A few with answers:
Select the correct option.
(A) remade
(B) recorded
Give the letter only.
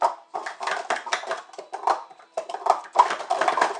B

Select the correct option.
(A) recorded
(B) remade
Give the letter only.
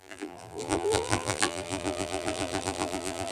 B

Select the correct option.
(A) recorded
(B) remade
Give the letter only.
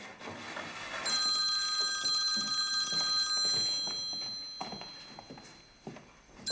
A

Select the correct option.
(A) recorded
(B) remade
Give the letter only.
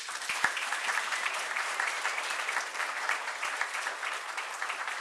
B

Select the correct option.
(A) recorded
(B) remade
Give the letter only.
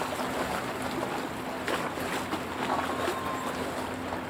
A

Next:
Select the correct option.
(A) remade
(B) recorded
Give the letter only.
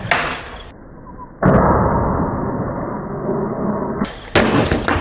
B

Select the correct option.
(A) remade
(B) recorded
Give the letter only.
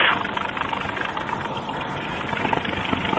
A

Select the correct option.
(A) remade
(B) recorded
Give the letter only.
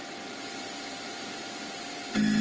B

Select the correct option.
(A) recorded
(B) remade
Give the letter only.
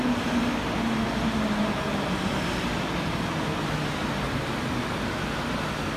A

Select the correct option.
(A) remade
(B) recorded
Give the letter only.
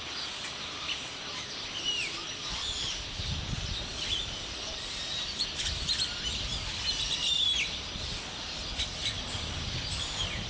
A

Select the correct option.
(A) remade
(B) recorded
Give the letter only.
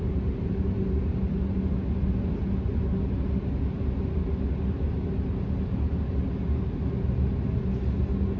B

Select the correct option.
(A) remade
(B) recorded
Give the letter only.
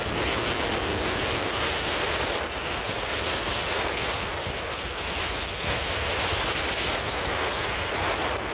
B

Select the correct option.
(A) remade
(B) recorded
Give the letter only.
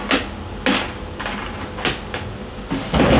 B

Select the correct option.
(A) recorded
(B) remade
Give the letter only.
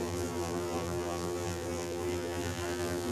B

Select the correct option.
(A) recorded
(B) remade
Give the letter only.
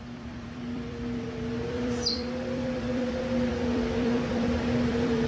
B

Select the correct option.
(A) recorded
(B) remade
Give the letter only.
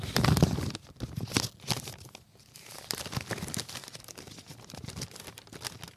A